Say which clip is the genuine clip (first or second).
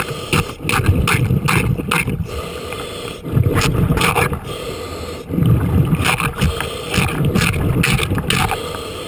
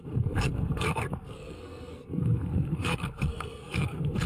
first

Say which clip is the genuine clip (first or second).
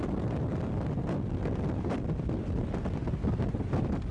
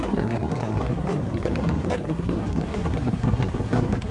first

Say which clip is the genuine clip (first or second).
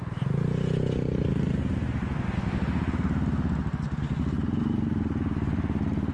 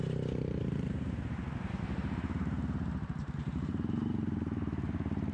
first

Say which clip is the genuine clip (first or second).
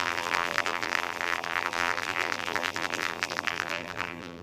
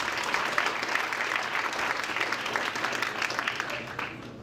second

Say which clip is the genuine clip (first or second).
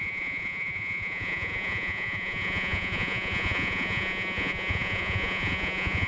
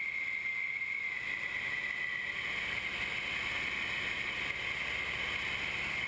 second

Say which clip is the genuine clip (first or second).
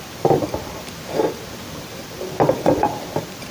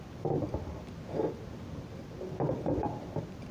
second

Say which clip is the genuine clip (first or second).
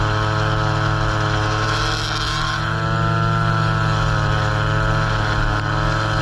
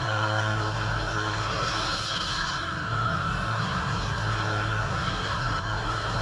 first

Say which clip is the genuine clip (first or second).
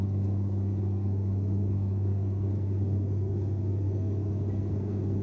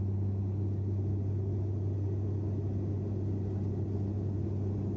second